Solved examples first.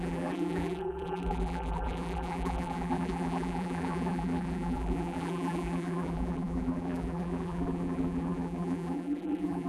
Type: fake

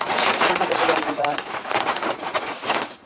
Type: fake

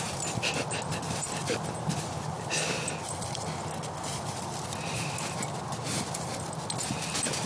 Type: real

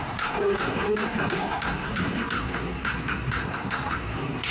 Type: fake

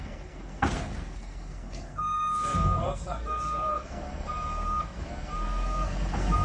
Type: fake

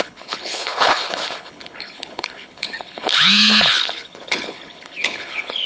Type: fake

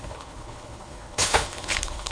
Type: fake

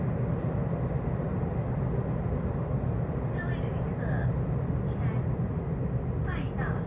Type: real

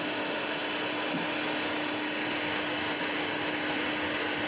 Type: real